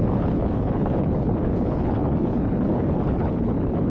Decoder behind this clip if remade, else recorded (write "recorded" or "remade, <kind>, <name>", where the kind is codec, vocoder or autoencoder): remade, codec, HILCodec